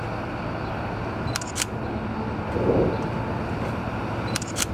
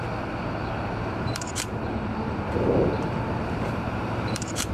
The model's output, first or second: second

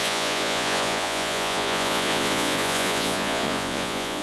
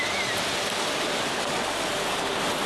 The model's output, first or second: first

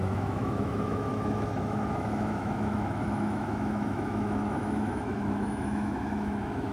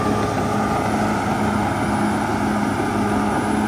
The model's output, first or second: first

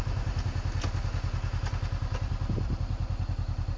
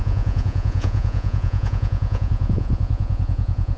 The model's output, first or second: second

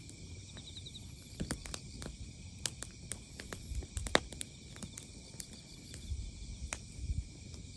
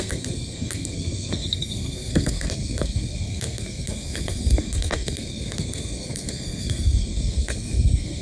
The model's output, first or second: second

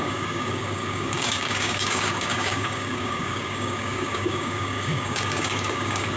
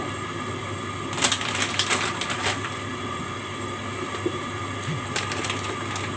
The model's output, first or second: first